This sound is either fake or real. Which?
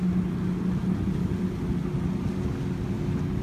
real